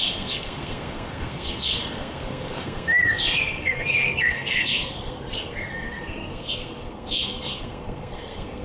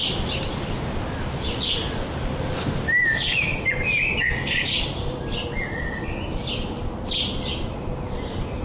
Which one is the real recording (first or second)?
second